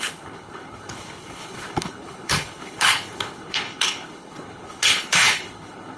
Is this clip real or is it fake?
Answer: fake